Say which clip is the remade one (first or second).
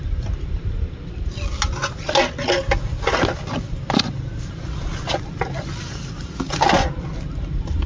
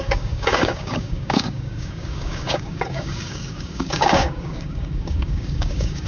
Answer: second